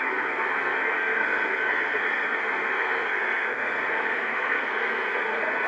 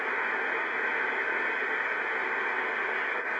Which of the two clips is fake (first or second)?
first